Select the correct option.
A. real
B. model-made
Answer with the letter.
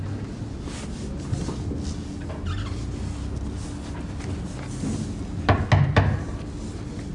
A